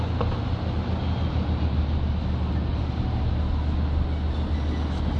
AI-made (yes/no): no